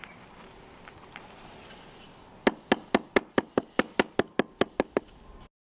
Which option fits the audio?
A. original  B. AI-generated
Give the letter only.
A